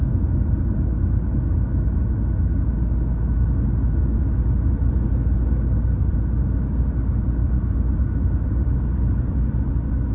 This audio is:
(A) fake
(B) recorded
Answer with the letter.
B